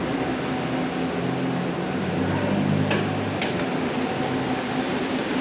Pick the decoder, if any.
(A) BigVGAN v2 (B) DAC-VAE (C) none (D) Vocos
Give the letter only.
C